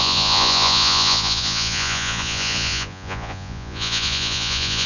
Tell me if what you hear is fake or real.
fake